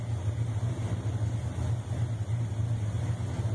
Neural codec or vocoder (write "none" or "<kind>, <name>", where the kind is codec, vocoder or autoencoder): none